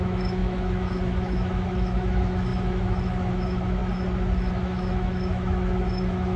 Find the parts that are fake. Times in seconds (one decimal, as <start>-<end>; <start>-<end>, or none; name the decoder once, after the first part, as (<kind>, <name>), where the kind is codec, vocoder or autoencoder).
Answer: 0.0-3.8 (autoencoder, DAC-VAE); 4.5-6.4